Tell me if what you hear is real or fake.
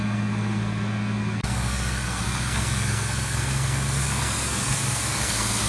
fake